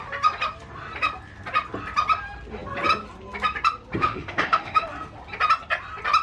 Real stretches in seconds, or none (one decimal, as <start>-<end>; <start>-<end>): 0.0-4.0; 4.9-6.2